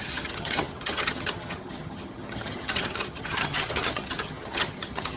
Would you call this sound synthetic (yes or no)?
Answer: yes